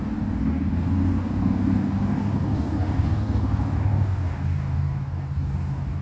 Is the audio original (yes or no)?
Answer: no